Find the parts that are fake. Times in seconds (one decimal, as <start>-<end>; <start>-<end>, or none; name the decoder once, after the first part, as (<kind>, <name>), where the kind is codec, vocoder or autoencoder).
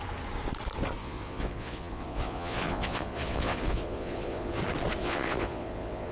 1.0-4.6 (vocoder, Vocos); 5.0-6.1